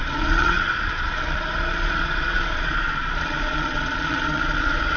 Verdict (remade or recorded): remade